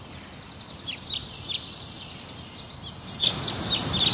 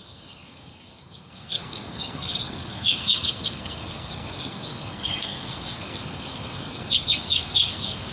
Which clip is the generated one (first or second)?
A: second